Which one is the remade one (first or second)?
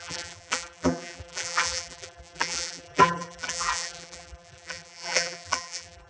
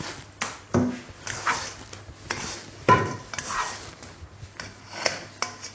first